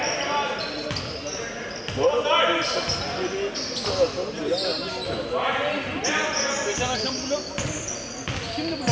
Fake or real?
real